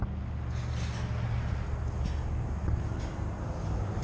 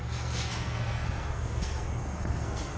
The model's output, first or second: second